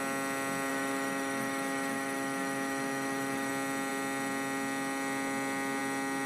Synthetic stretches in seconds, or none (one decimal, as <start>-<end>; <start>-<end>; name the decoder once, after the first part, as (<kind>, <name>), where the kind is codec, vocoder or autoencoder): 0.7-3.5 (autoencoder, DAC-VAE)